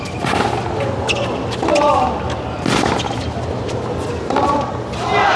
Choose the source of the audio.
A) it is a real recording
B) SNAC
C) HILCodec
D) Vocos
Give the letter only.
A